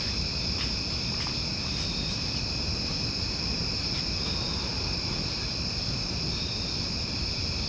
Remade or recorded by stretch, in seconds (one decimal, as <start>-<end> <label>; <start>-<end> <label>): 0.0-4.7 recorded; 4.7-5.3 remade; 5.3-7.7 recorded